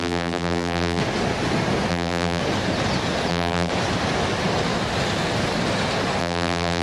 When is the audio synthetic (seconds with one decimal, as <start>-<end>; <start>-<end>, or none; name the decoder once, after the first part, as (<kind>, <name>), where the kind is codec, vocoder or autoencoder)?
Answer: 0.0-1.0 (vocoder, BigVGAN v2); 1.9-2.4; 3.3-3.7; 6.2-6.8